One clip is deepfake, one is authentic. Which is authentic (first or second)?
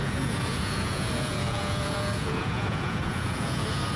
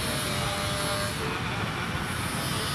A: second